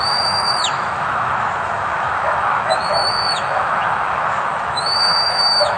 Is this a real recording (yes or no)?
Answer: no